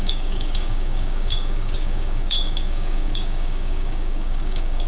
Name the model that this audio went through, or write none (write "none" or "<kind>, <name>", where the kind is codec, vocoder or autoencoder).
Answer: codec, DAC